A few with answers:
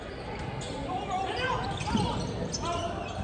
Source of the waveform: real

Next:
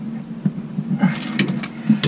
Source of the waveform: real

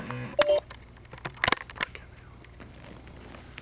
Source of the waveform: real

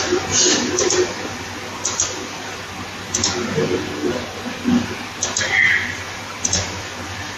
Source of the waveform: real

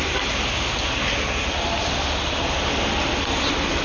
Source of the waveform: real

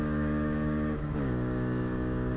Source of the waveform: fake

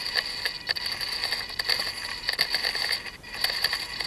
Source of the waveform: real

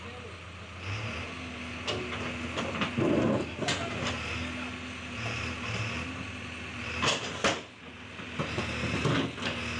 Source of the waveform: real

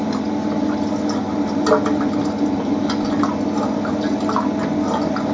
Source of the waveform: real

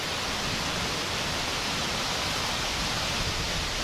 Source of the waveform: real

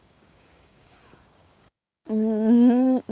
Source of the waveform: fake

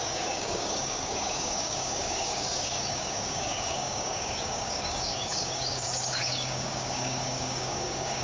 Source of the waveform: fake